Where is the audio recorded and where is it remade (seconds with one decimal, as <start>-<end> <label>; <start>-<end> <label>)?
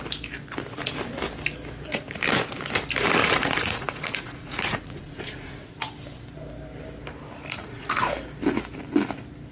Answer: 0.0-3.2 recorded; 3.2-5.7 remade; 5.7-7.6 recorded; 7.6-8.1 remade; 8.1-9.5 recorded